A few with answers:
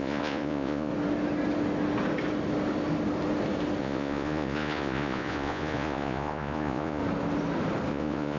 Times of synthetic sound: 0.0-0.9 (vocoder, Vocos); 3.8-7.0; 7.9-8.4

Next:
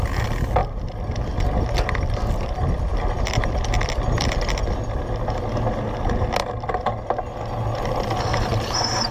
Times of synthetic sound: none

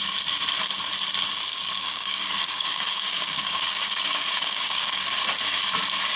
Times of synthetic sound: 1.5-5.2 (codec, DAC)

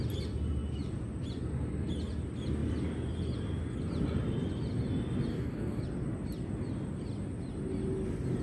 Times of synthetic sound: 5.3-5.8 (codec, DAC)

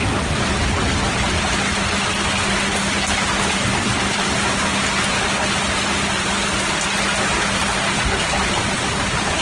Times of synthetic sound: none

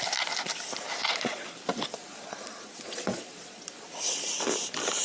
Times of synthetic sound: 1.0-1.5 (vocoder, Vocos); 2.1-3.7